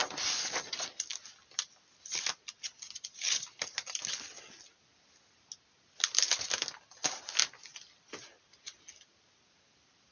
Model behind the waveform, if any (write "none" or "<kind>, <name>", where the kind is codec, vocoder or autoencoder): none